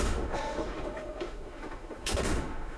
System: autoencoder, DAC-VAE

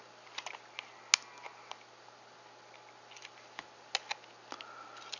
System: none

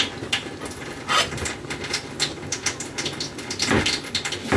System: none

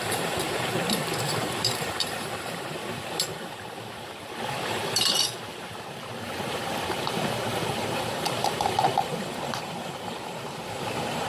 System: vocoder, BigVGAN v2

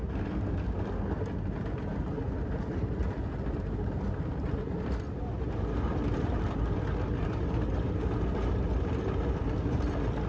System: none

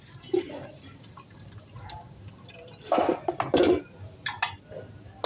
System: none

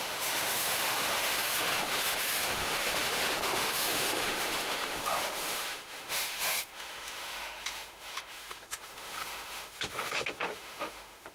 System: autoencoder, DAC-VAE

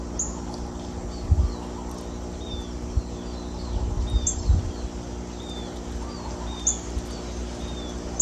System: none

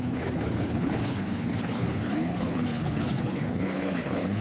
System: codec, HILCodec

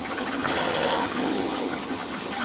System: vocoder, HiFi-GAN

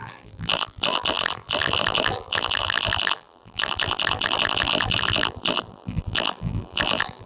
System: vocoder, BigVGAN v2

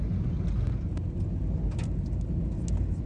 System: none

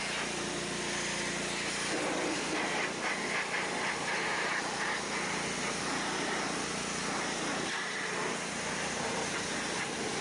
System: none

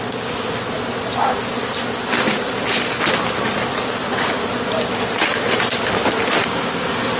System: none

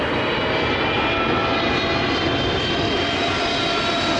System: none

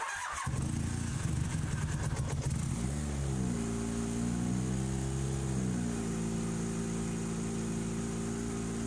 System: none